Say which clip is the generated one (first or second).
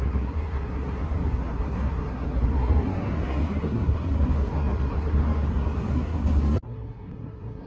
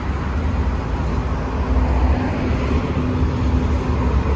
first